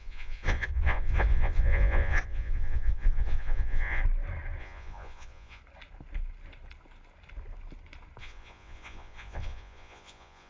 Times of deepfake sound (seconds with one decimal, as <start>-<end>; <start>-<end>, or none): 0.0-4.0; 4.6-5.6; 8.2-10.5